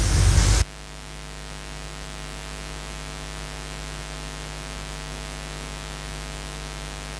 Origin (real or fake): real